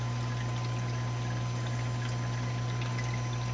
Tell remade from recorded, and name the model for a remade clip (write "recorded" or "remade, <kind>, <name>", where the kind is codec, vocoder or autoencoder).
recorded